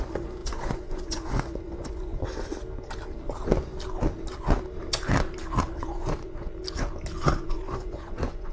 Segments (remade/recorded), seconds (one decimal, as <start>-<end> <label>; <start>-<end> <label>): 0.0-2.1 remade; 2.1-5.7 recorded; 5.7-6.5 remade; 6.5-7.2 recorded; 7.2-8.5 remade